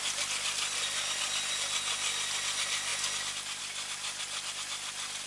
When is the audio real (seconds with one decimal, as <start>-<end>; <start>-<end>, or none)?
0.0-5.3